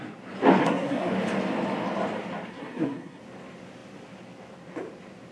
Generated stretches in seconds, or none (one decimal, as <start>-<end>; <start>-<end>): 0.6-1.1; 2.5-3.2